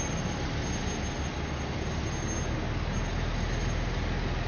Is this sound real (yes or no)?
yes